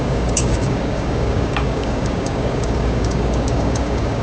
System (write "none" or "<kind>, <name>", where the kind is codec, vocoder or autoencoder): codec, DAC